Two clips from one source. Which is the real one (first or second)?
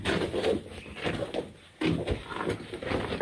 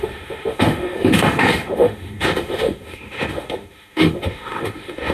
first